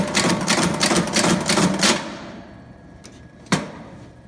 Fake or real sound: real